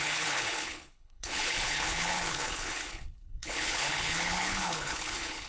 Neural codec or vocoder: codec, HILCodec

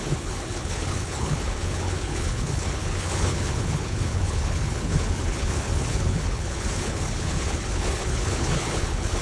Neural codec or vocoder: codec, HILCodec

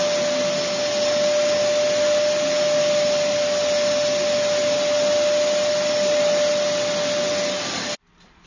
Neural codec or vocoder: none